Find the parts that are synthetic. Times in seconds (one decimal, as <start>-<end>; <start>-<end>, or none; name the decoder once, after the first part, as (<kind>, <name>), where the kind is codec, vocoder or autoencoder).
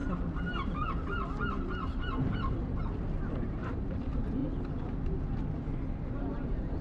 3.4-4.4 (vocoder, BigVGAN v2); 6.1-6.8